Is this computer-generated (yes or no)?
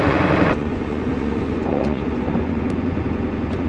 yes